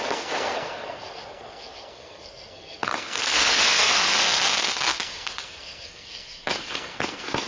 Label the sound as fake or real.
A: fake